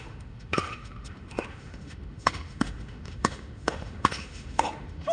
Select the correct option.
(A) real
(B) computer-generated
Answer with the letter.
B